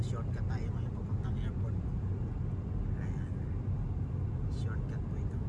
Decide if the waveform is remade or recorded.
recorded